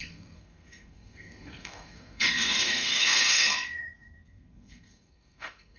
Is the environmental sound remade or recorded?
remade